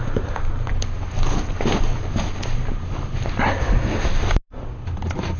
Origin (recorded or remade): recorded